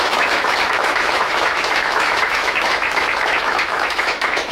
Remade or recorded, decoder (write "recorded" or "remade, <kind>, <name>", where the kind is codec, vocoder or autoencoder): remade, autoencoder, DAC-VAE